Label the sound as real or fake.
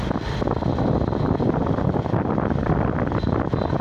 real